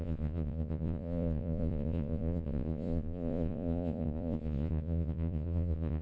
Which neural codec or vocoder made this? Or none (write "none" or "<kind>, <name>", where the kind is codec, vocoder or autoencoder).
vocoder, Vocos